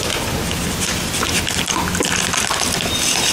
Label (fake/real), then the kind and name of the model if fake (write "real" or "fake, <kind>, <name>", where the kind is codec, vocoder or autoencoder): real